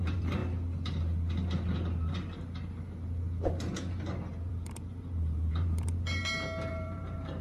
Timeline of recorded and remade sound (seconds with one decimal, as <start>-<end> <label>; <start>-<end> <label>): 0.0-0.4 remade; 0.4-4.5 recorded; 4.5-6.2 remade; 6.2-6.7 recorded; 6.7-7.4 remade